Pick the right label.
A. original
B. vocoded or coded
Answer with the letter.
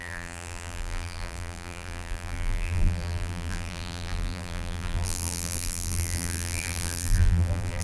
B